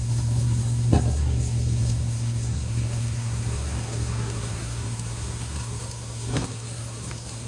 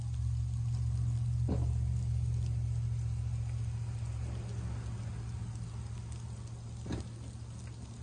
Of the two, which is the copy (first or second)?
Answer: first